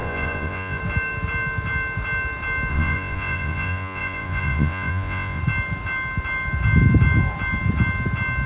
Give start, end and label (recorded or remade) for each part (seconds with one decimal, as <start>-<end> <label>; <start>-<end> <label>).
0.0-0.8 remade; 0.8-2.7 recorded; 2.7-5.4 remade; 5.4-8.5 recorded